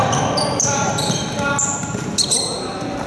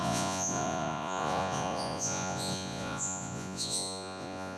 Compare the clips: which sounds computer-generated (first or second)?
second